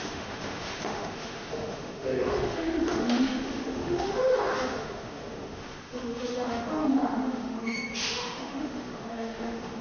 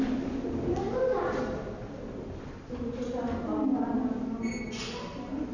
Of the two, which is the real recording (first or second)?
second